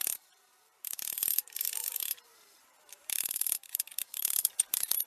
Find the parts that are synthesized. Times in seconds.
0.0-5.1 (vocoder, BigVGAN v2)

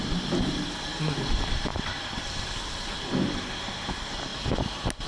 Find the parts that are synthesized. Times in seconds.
1.7-2.8 (vocoder, BigVGAN v2)

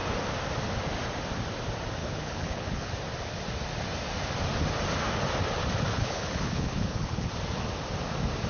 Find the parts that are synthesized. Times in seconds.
2.0-2.9 (codec, HILCodec); 5.9-7.3

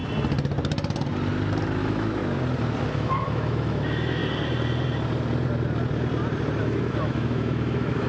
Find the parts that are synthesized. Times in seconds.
1.8-2.2 (autoencoder, DAC-VAE); 2.9-4.2; 6.6-8.1